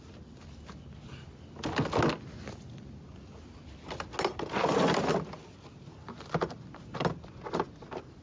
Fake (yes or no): no